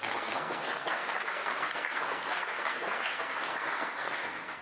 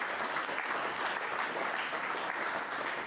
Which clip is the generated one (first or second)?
first